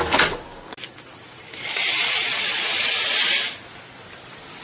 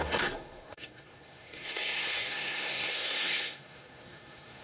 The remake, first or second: second